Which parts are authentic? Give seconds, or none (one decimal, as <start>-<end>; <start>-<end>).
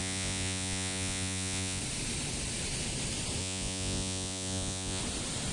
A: 1.8-3.4; 5.0-5.5